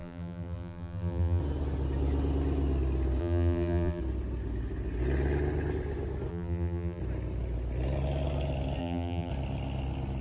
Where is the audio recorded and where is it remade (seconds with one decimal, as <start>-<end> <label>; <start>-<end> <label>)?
0.0-1.4 remade; 1.4-3.2 recorded; 3.2-4.0 remade; 4.0-6.3 recorded; 6.3-7.0 remade; 7.0-8.8 recorded; 8.8-9.3 remade; 9.3-10.2 recorded

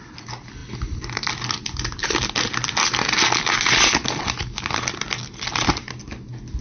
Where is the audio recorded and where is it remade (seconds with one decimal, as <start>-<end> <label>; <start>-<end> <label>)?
0.0-0.6 recorded; 0.6-1.3 remade; 1.3-6.6 recorded